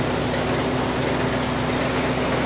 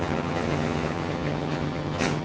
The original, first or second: first